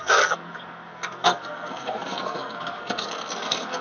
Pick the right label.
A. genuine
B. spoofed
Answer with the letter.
B